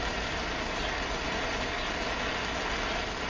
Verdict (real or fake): real